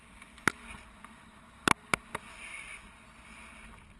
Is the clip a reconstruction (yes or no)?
no